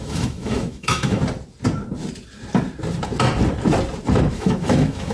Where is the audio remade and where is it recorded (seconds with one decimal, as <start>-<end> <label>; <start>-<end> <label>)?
0.0-1.2 remade; 1.2-4.3 recorded; 4.3-5.1 remade